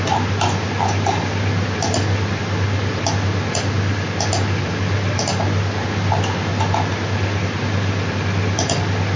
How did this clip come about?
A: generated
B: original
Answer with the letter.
B